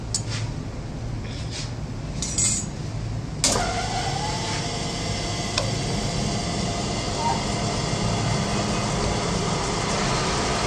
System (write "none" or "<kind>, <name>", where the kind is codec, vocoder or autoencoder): none